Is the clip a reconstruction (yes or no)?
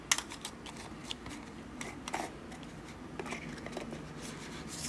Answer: no